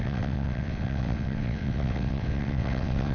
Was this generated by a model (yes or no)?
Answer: yes